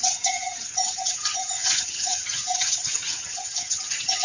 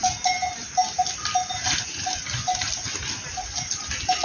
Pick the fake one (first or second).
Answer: first